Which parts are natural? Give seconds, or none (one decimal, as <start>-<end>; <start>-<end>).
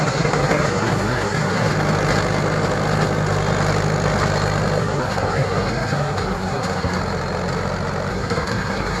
1.7-4.8; 7.0-8.1